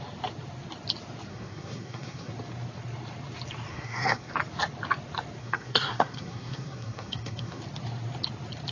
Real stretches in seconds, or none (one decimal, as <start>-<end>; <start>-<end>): 0.0-1.3; 2.3-3.7; 4.3-5.4; 7.6-8.7